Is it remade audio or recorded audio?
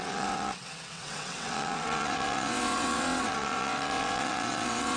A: remade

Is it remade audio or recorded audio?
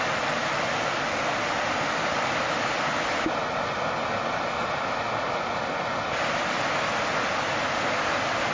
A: recorded